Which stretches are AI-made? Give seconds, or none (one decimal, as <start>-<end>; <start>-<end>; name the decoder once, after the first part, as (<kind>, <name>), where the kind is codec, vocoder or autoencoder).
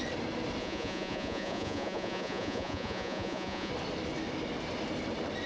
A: 0.6-3.7 (vocoder, Vocos)